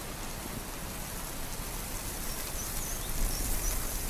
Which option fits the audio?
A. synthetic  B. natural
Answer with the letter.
B